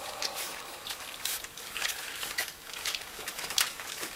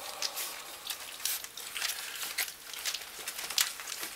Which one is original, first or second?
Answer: second